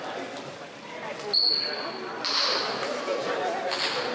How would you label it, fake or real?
real